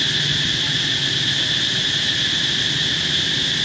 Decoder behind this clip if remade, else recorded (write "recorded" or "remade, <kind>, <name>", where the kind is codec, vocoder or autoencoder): recorded